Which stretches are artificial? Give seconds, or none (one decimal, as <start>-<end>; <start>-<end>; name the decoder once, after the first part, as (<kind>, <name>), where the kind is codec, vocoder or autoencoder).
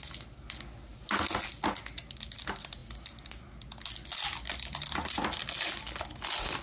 none